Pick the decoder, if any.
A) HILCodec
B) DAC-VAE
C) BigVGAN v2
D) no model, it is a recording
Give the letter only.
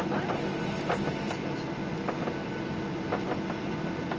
D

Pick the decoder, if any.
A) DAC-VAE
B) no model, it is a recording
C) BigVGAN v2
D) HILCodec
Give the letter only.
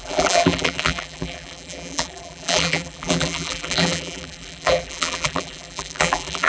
C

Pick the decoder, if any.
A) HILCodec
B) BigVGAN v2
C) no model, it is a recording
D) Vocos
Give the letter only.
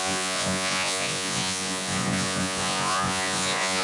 D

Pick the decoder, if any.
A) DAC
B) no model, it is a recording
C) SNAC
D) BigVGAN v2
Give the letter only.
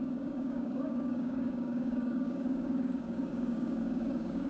A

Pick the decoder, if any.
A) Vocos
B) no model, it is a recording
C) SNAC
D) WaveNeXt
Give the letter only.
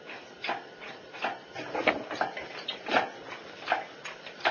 B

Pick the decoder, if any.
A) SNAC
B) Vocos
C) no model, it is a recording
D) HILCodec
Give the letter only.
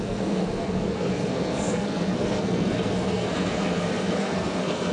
A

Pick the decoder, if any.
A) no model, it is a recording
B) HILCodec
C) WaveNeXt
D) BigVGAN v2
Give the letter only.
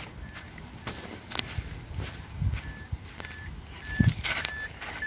A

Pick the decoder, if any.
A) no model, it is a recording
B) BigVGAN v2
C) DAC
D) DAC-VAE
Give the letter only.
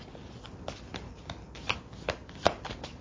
A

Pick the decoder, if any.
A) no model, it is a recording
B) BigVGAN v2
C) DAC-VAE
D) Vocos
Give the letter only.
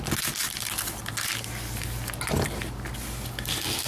A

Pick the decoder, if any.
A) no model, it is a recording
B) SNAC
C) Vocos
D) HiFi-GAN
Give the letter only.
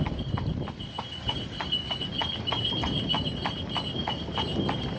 A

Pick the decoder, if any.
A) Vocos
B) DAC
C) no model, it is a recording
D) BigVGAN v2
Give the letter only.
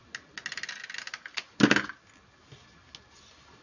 C